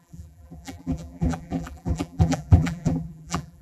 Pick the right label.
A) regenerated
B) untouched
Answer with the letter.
A